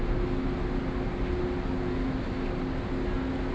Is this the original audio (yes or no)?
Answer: yes